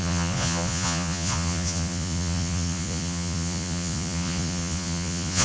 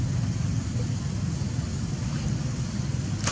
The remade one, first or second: first